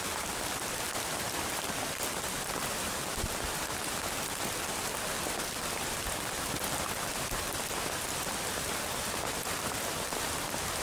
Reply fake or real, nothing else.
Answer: real